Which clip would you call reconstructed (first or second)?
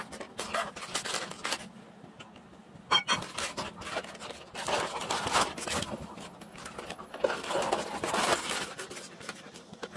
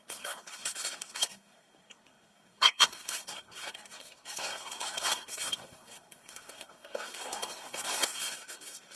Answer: second